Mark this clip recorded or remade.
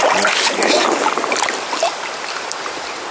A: recorded